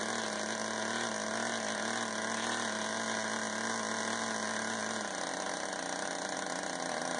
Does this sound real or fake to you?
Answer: real